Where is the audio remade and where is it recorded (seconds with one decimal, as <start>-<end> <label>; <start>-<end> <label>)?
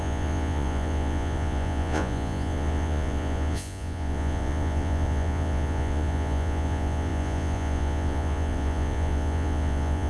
0.0-10.1 remade